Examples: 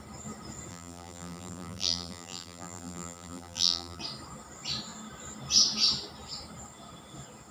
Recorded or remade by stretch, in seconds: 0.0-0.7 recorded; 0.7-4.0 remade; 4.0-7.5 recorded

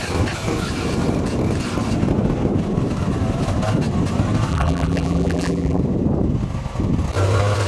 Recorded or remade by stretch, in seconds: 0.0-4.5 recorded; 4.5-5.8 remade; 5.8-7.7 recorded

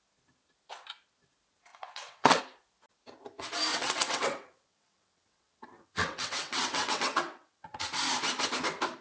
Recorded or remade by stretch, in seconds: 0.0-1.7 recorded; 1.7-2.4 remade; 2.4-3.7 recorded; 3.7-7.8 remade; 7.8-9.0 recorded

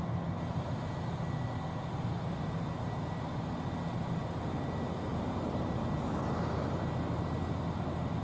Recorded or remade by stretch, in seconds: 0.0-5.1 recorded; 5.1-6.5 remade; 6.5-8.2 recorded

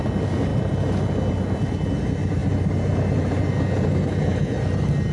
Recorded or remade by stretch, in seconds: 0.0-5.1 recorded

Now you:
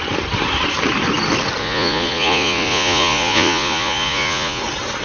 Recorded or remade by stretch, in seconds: 0.0-1.6 recorded; 1.6-4.6 remade; 4.6-5.0 recorded